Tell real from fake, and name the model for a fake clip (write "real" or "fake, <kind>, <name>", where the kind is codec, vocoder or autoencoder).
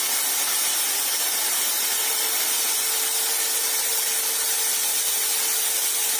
real